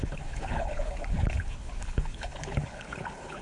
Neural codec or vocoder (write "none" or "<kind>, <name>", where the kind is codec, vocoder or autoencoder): codec, HILCodec